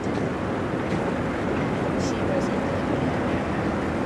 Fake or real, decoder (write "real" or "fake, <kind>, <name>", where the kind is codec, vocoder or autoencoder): real